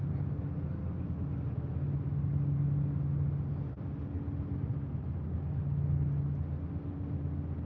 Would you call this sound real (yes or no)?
yes